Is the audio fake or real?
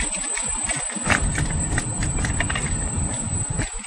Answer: real